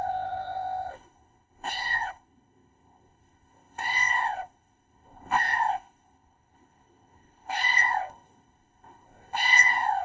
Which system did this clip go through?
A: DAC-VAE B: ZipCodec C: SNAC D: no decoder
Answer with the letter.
B